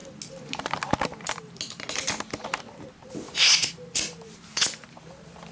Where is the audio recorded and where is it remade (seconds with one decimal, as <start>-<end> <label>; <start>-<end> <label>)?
0.0-5.5 recorded